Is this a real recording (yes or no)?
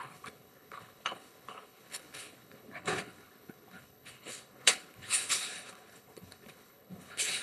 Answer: no